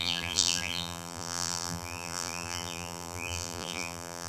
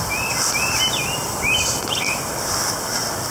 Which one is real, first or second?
second